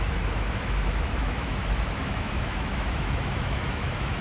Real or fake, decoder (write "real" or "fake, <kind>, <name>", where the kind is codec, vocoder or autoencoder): fake, autoencoder, DAC-VAE